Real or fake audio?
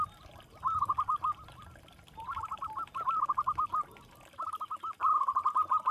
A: real